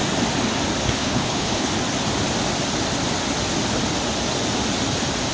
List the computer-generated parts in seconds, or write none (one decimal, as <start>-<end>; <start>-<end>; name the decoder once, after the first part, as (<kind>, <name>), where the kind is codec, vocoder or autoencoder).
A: 0.8-1.7 (codec, HILCodec)